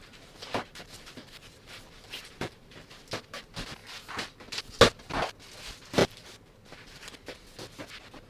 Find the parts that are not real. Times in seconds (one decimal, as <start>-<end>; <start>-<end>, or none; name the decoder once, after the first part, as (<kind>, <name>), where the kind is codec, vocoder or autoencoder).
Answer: 0.0-2.9 (vocoder, BigVGAN v2); 6.0-7.1